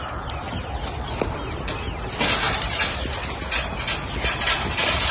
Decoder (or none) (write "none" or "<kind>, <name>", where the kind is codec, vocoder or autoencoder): none